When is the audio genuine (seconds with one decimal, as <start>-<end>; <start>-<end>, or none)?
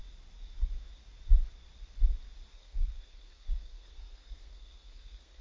0.0-2.5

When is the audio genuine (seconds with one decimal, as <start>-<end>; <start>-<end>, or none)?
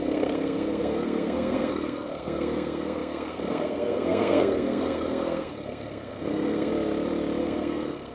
6.7-7.4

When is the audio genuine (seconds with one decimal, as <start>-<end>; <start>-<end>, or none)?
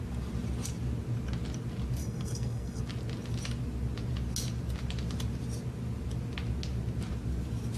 0.0-2.0; 2.8-7.8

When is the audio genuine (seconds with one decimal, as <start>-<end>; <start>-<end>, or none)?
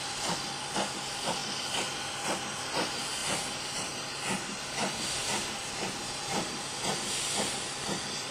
0.0-8.3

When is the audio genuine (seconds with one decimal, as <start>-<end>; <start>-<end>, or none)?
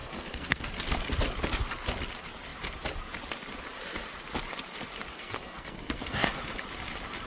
0.7-5.1; 6.4-7.3